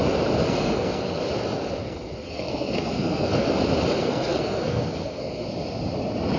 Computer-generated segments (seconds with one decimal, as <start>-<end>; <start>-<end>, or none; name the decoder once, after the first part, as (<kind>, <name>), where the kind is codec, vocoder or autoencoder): 0.4-1.2 (codec, SNAC); 1.8-3.5; 4.0-5.5